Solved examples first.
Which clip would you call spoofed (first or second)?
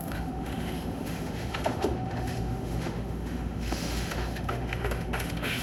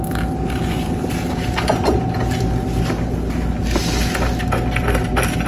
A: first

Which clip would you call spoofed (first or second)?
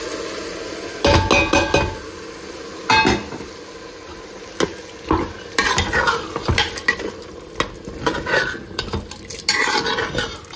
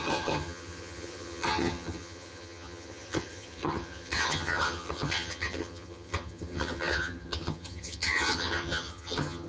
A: second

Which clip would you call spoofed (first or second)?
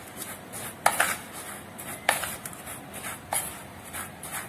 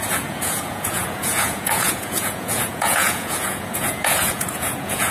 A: second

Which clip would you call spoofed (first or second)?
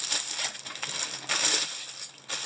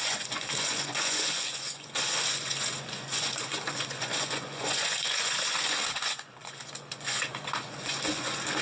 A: second